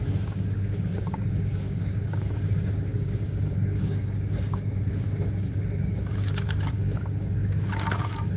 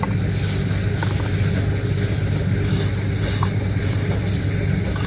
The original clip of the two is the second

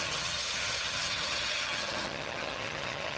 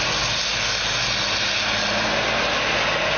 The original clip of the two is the second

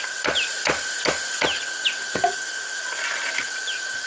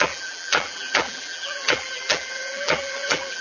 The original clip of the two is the first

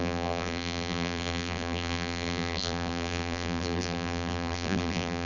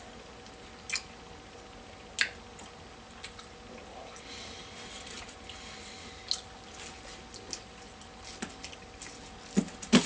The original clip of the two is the second